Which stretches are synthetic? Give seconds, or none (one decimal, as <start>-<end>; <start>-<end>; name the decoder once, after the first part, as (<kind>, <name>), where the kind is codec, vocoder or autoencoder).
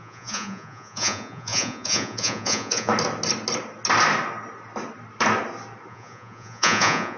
0.0-2.9 (vocoder, Vocos); 5.9-7.2